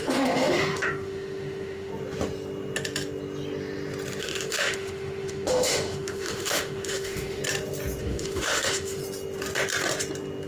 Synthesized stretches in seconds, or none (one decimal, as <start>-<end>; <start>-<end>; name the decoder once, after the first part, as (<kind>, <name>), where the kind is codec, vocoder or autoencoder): 0.0-1.9 (autoencoder, DAC-VAE); 4.2-7.4; 8.0-9.0